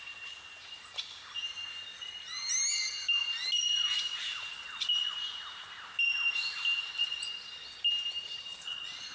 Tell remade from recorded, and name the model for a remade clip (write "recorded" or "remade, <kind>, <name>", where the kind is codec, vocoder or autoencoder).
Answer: recorded